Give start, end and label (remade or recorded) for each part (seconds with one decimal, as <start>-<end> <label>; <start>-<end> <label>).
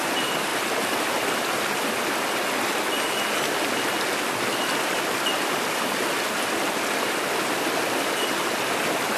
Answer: 0.0-9.2 recorded